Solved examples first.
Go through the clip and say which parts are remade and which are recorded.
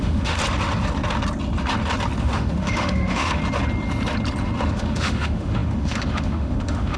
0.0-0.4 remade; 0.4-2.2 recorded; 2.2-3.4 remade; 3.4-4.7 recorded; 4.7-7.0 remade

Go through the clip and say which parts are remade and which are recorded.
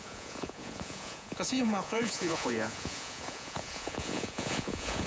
0.0-5.1 remade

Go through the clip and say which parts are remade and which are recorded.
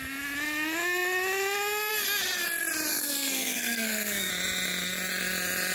0.0-2.9 recorded; 2.9-4.3 remade; 4.3-5.7 recorded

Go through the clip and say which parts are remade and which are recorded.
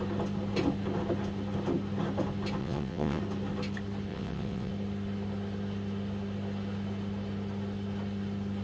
0.0-2.6 recorded; 2.6-3.2 remade; 3.2-4.1 recorded; 4.1-4.7 remade; 4.7-8.6 recorded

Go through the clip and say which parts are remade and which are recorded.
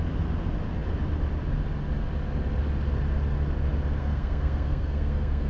0.0-4.0 recorded; 4.0-5.5 remade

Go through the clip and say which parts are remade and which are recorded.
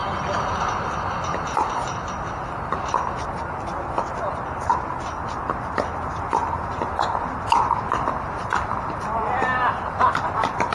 0.0-10.7 recorded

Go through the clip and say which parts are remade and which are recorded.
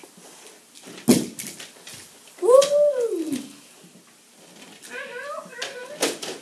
0.0-6.4 recorded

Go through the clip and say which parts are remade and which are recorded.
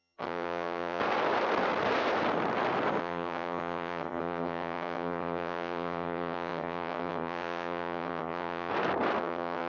0.0-1.0 remade; 1.0-3.0 recorded; 3.0-8.7 remade; 8.7-9.2 recorded; 9.2-9.7 remade